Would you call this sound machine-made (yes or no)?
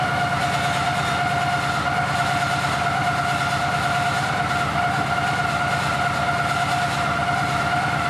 no